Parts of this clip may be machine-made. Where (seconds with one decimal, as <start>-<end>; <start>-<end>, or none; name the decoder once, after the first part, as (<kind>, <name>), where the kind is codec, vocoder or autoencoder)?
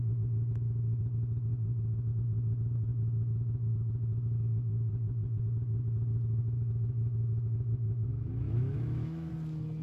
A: 0.5-1.0 (autoencoder, DAC-VAE); 2.9-5.4; 6.4-9.3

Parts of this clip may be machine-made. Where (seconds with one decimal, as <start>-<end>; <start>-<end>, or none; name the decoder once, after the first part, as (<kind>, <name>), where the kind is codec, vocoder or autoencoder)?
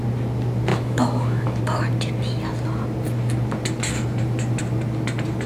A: 0.7-1.6 (autoencoder, DAC-VAE)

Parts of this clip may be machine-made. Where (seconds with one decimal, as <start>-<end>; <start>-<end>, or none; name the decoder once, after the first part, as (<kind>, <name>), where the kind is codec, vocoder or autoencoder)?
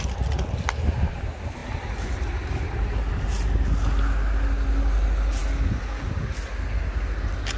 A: none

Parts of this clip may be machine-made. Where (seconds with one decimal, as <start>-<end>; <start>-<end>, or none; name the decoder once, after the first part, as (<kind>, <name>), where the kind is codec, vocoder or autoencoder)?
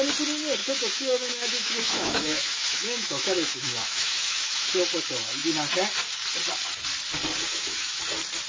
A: 0.6-4.7 (autoencoder, DAC-VAE); 7.5-8.0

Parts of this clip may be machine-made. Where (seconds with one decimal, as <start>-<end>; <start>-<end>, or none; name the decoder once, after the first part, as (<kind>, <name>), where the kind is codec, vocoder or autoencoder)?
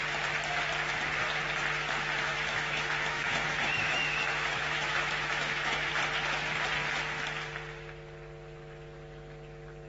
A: 2.3-5.9 (autoencoder, DAC-VAE)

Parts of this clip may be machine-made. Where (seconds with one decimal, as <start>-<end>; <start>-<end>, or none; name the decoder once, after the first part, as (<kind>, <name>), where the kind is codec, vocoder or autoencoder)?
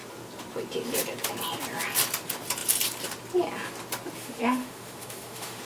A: 4.2-5.6 (autoencoder, DAC-VAE)